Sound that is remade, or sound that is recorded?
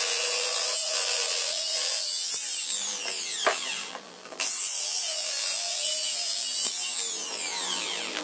remade